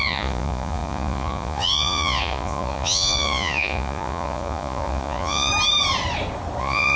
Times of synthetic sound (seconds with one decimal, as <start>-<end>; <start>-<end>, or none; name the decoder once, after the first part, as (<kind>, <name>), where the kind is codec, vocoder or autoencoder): 0.0-5.5 (vocoder, Vocos); 6.6-7.0